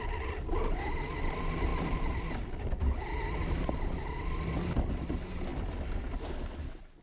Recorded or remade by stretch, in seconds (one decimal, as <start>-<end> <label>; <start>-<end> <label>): 0.0-7.0 recorded